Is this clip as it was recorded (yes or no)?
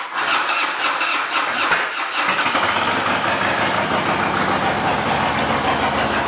yes